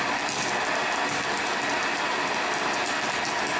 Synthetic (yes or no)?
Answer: no